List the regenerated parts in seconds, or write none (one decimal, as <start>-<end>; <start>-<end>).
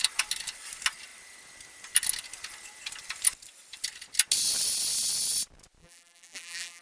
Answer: 5.8-6.8